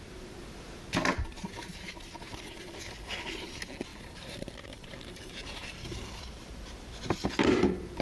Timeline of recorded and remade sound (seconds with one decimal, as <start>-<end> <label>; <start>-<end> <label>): 0.0-3.9 recorded; 3.9-6.2 remade; 6.2-8.0 recorded